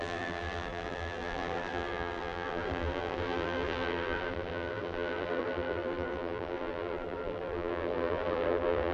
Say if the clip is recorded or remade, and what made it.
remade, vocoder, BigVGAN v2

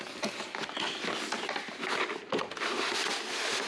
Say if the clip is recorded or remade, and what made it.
recorded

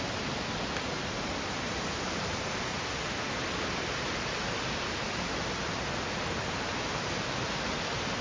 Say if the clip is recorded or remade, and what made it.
recorded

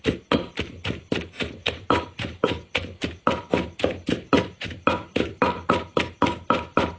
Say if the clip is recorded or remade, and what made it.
recorded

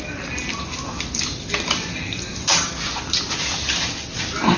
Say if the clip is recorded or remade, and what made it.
recorded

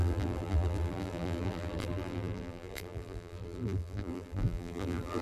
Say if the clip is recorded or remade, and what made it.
remade, vocoder, BigVGAN v2